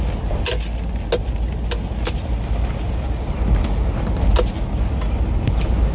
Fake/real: real